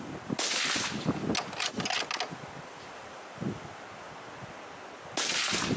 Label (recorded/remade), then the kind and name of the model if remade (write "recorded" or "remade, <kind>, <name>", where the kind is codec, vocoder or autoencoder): recorded